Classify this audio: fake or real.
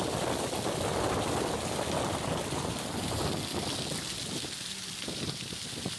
real